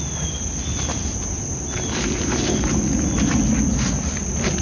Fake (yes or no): no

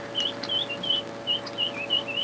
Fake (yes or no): no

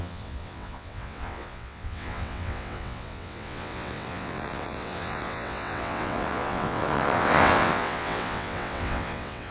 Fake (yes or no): yes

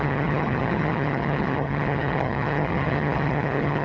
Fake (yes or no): yes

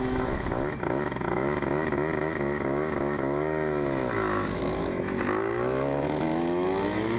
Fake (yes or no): yes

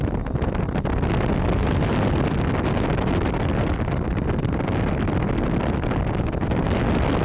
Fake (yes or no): no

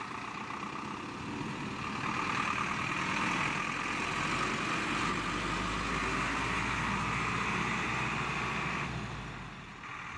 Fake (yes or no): no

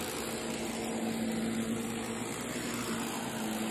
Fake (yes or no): no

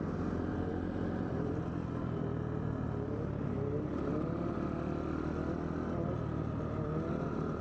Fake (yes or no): no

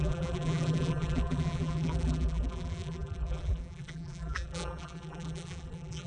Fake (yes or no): yes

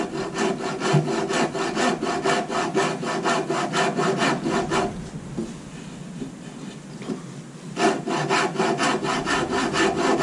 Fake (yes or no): no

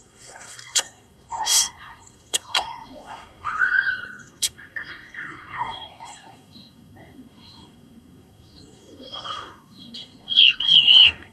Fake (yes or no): yes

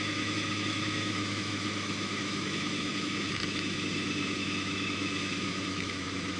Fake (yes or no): yes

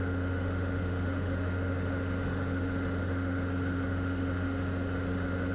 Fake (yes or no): yes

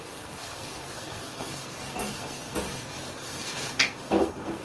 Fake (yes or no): yes